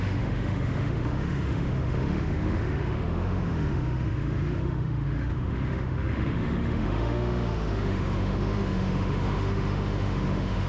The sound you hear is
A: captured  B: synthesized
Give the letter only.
B